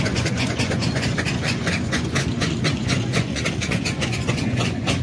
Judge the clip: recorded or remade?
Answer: remade